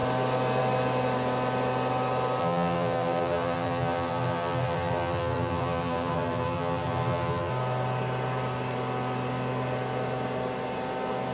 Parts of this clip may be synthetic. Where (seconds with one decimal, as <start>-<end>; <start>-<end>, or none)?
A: 2.4-7.5